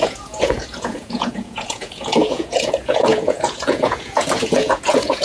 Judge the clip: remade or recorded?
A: remade